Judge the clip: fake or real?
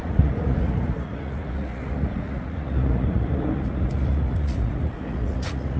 fake